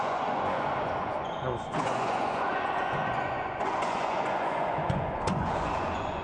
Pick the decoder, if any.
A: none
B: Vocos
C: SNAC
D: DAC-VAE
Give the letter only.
B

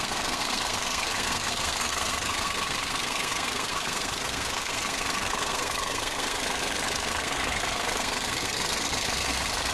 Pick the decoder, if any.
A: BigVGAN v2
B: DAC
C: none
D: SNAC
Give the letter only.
D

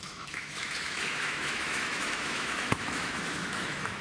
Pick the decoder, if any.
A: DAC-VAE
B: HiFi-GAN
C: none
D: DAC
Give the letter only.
A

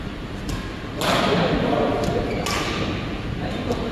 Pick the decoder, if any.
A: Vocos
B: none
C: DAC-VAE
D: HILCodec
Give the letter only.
B